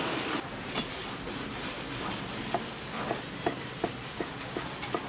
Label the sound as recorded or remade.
recorded